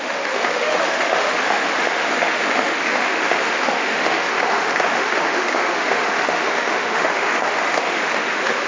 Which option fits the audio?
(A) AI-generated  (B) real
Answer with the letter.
A